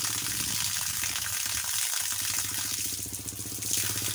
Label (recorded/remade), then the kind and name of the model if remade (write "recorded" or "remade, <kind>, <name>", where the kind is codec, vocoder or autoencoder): recorded